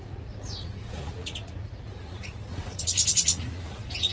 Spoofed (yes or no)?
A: yes